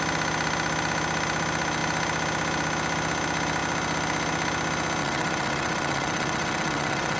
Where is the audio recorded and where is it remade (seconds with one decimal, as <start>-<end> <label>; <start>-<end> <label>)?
0.0-5.0 recorded; 5.0-7.2 remade